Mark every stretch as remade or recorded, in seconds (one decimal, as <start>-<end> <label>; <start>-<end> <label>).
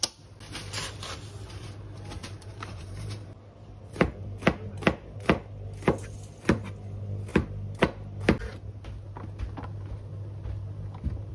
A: 0.0-2.2 recorded; 2.2-3.4 remade; 3.4-11.3 recorded